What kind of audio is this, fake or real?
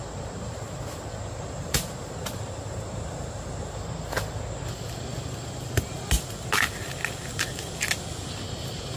real